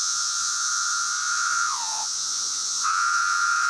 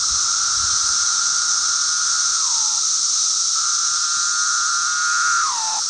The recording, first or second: second